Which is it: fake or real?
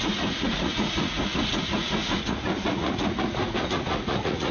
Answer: fake